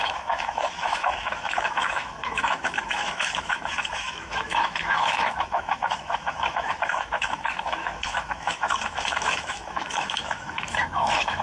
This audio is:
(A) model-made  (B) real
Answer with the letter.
A